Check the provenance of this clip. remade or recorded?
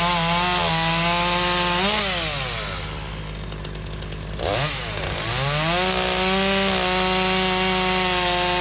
recorded